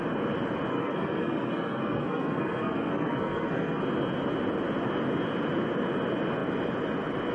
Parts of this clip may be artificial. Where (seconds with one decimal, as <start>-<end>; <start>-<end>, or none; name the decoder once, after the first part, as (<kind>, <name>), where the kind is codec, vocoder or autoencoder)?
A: 0.7-3.8 (codec, SNAC)